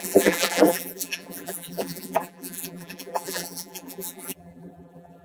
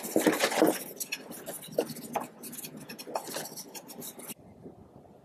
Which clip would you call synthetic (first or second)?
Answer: first